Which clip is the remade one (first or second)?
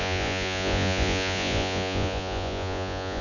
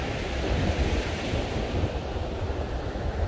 first